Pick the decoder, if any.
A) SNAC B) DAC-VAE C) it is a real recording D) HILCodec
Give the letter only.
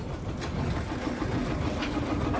C